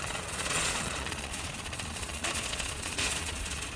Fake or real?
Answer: fake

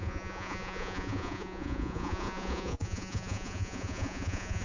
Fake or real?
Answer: fake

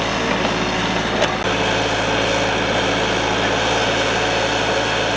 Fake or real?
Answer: real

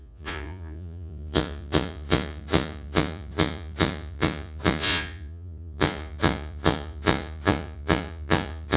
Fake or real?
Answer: fake